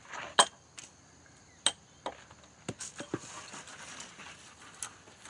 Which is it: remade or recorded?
recorded